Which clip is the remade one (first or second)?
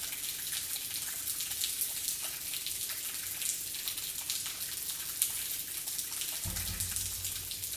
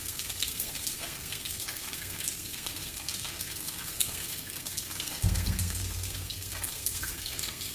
second